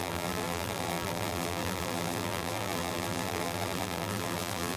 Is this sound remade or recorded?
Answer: remade